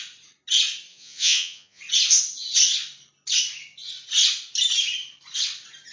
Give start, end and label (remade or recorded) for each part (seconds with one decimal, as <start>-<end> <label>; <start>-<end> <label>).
0.0-0.9 recorded; 0.9-1.8 remade; 1.8-5.9 recorded